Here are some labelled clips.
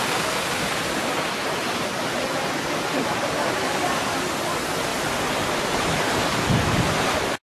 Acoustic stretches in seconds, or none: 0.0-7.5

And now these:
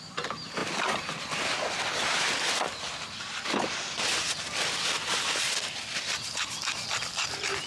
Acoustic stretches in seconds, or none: 0.0-7.7